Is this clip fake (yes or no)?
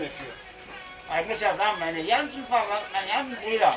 no